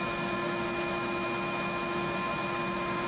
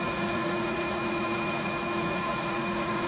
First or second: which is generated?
second